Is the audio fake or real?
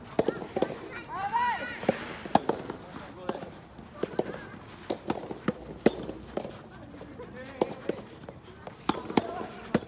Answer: real